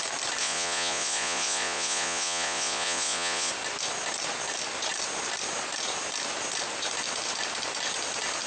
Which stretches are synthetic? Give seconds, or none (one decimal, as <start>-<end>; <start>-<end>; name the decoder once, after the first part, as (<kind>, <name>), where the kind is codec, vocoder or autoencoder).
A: 0.4-3.5 (vocoder, Vocos)